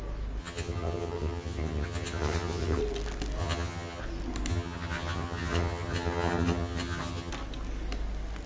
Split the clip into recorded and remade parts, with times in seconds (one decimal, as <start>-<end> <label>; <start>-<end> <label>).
0.0-0.4 recorded; 0.4-2.8 remade; 2.8-3.4 recorded; 3.4-4.0 remade; 4.0-4.5 recorded; 4.5-7.3 remade; 7.3-8.5 recorded